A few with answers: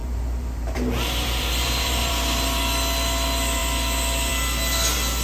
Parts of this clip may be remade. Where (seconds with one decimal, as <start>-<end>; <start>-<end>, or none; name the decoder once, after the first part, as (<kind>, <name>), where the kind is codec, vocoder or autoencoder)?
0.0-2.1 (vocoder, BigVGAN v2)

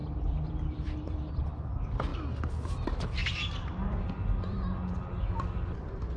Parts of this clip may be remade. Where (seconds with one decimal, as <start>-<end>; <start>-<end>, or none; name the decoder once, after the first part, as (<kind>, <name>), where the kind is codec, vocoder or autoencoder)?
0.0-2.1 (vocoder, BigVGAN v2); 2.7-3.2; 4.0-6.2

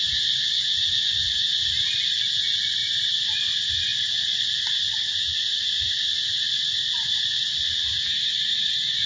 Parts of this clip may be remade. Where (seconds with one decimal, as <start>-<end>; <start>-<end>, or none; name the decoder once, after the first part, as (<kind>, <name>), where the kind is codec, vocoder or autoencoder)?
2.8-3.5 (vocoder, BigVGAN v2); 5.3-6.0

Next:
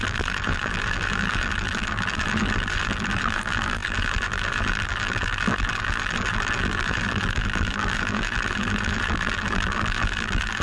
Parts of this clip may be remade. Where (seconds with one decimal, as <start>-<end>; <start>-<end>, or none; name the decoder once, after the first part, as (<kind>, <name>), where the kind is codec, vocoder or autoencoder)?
0.0-10.6 (vocoder, BigVGAN v2)

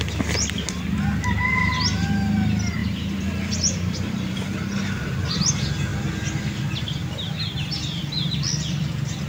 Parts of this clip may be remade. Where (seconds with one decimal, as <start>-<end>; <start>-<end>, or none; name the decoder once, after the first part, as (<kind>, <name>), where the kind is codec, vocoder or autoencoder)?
2.8-5.3 (vocoder, BigVGAN v2); 7.0-8.0

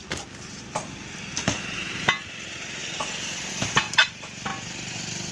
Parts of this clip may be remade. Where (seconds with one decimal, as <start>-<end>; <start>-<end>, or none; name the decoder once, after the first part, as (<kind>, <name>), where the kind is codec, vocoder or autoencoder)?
2.8-3.5 (vocoder, BigVGAN v2)